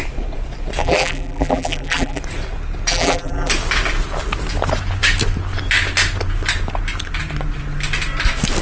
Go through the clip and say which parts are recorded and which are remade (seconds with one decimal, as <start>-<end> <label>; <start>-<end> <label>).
0.0-0.8 recorded; 0.8-2.2 remade; 2.2-2.9 recorded; 2.9-3.5 remade; 3.5-8.6 recorded